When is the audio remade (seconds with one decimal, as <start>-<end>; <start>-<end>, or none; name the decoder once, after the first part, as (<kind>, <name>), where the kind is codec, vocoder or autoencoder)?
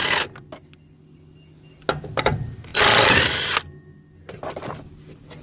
0.0-0.5 (vocoder, BigVGAN v2); 2.7-3.3